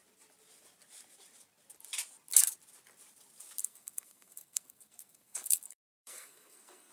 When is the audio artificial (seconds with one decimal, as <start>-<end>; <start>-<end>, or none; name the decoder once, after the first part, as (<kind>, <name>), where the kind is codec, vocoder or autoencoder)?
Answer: 3.6-6.9 (codec, SNAC)